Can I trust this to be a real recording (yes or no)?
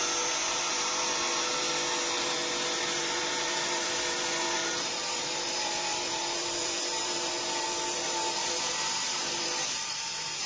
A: no